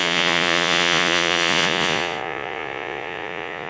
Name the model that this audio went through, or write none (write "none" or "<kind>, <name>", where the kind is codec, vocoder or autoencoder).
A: vocoder, Vocos